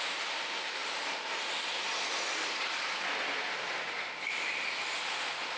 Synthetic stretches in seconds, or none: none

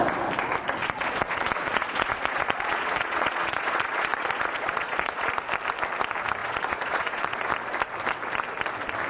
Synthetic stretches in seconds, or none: 0.8-5.3 (vocoder, Vocos); 6.4-7.5

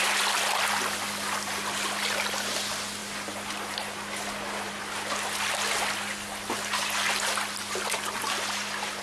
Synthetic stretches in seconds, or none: none

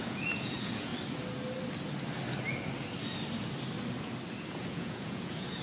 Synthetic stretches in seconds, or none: 0.0-0.9 (vocoder, Vocos); 4.3-5.6